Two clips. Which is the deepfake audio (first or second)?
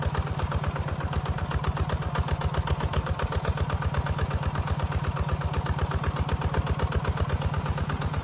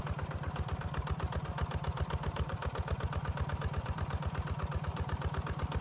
second